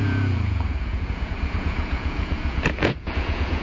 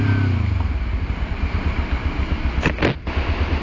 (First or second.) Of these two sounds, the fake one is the first